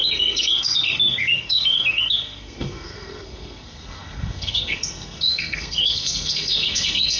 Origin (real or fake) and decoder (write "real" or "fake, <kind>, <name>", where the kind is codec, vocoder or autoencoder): fake, codec, SNAC